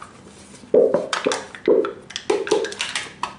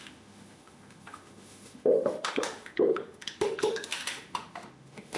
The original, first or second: first